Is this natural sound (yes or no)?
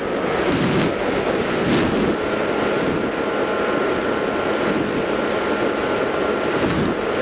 yes